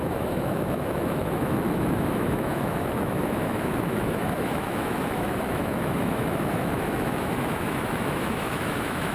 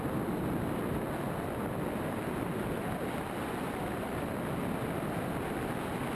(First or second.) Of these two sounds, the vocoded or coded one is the first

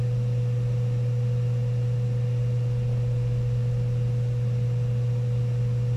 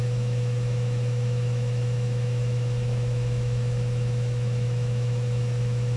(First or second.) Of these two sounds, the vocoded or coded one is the second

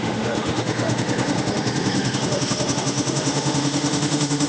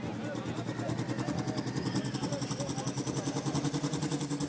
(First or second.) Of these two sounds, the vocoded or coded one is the first